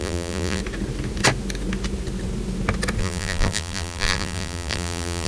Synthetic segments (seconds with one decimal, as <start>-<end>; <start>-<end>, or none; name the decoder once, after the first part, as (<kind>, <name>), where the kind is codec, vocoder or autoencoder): 0.0-0.6 (vocoder, BigVGAN v2); 3.0-5.3